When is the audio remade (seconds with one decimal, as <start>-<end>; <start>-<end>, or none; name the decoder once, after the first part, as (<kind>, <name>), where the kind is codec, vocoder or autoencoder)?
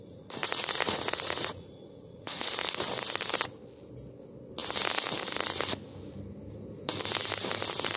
0.0-2.5 (vocoder, Vocos)